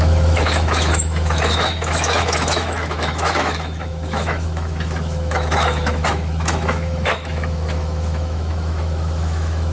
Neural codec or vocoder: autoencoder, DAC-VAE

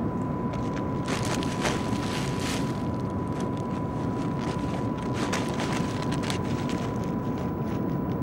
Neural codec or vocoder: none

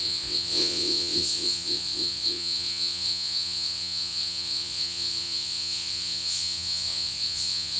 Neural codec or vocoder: vocoder, WaveNeXt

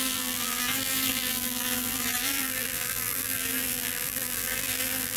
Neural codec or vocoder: vocoder, BigVGAN v2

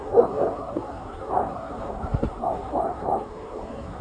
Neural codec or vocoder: codec, SNAC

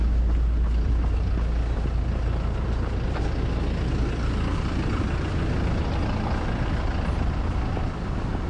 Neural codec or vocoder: none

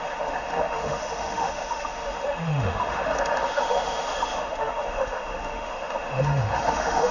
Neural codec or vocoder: autoencoder, DAC-VAE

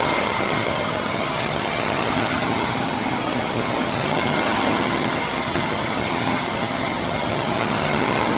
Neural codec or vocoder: vocoder, HiFi-GAN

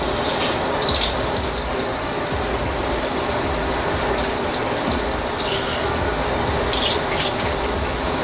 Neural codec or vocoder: none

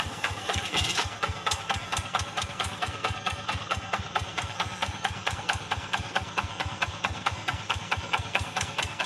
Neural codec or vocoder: codec, SNAC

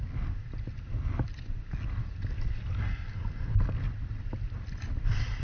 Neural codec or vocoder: none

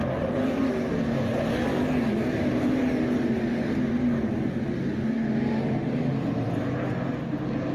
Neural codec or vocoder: none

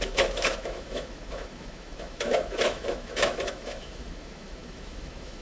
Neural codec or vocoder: autoencoder, DAC-VAE